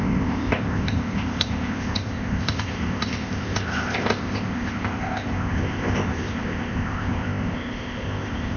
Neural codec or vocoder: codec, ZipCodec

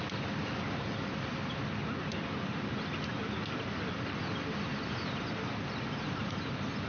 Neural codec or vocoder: none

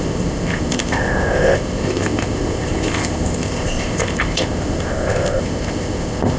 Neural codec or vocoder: codec, ZipCodec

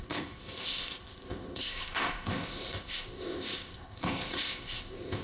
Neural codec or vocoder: codec, ZipCodec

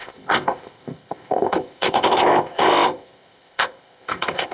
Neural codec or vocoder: codec, ZipCodec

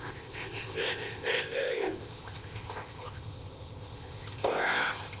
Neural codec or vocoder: codec, ZipCodec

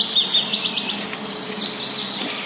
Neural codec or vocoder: none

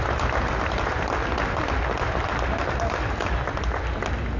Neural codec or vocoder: none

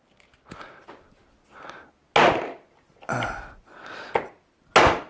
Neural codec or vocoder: none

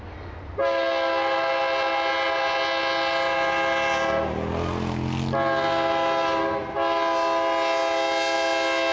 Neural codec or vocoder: none